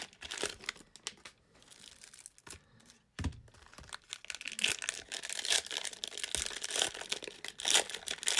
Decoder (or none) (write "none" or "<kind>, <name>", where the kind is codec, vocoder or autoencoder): none